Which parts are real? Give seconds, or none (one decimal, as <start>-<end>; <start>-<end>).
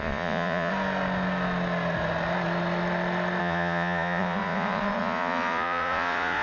0.7-3.4